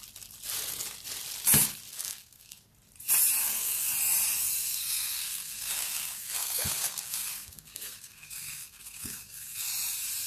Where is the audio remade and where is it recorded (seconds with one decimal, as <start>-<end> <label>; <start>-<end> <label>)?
0.0-1.9 recorded; 1.9-2.7 remade; 2.7-3.4 recorded; 3.4-3.9 remade; 3.9-4.6 recorded; 4.6-9.7 remade; 9.7-10.3 recorded